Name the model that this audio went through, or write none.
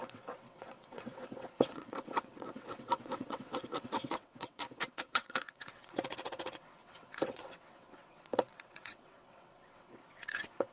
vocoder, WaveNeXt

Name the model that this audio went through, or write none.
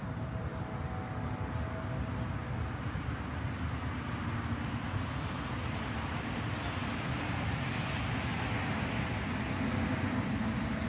none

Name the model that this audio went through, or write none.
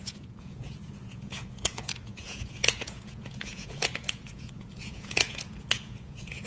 vocoder, Vocos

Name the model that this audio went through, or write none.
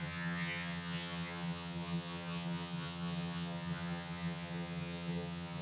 vocoder, HiFi-GAN